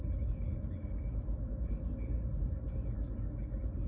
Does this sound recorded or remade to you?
recorded